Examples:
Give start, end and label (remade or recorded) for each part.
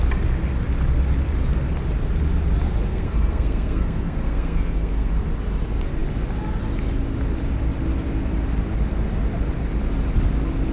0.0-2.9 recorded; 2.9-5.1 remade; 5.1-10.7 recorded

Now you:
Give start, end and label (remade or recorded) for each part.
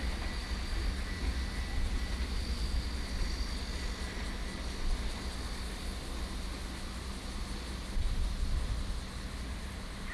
0.0-10.1 recorded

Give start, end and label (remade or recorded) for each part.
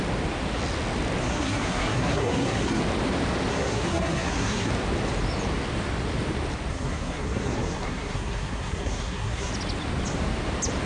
0.0-1.2 recorded; 1.2-2.8 remade; 2.8-3.5 recorded; 3.5-4.7 remade; 4.7-6.7 recorded; 6.7-9.5 remade; 9.5-10.9 recorded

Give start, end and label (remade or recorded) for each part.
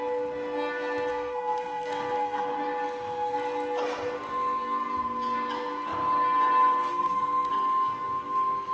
0.0-1.1 recorded; 1.1-2.5 remade; 2.5-6.9 recorded; 6.9-7.5 remade; 7.5-8.7 recorded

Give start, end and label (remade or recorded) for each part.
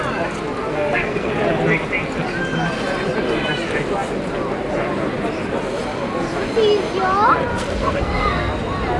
0.0-0.7 recorded; 0.7-1.3 remade; 1.3-7.5 recorded; 7.5-8.5 remade; 8.5-9.0 recorded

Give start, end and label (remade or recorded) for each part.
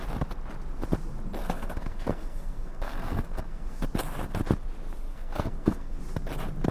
0.0-1.4 recorded; 1.4-3.8 remade; 3.8-5.1 recorded; 5.1-6.0 remade; 6.0-6.7 recorded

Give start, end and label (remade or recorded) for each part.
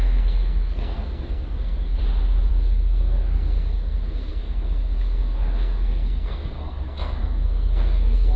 0.0-2.0 remade; 2.0-2.5 recorded; 2.5-8.4 remade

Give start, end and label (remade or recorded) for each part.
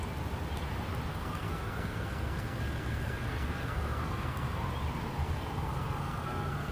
0.0-1.1 recorded; 1.1-4.7 remade; 4.7-5.2 recorded; 5.2-6.7 remade